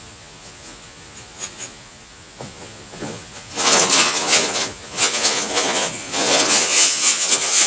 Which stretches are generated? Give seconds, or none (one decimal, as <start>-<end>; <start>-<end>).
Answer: 0.0-7.7